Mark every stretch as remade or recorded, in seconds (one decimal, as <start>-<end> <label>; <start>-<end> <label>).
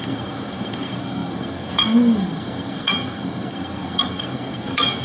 0.0-5.0 remade